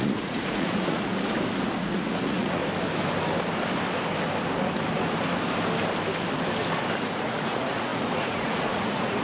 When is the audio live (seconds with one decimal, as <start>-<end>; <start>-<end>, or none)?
1.1-1.8; 2.6-7.1